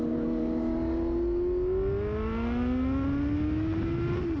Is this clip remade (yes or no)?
no